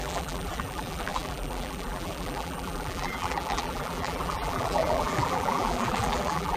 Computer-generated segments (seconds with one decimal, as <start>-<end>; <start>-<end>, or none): 0.0-6.6